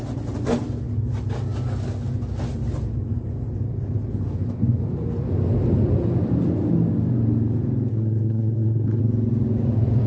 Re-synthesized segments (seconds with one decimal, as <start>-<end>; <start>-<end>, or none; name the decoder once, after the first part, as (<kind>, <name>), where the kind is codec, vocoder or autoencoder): 7.9-9.0 (codec, SNAC)